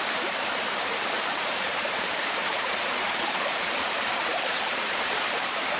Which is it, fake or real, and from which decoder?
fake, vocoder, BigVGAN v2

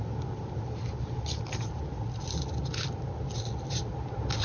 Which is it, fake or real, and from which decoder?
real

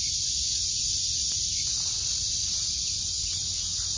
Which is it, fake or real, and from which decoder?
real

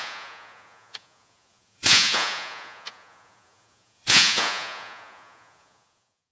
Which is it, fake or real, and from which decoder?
fake, vocoder, Vocos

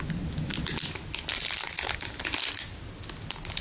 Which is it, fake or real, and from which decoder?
real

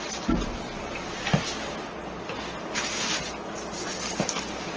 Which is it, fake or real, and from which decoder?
real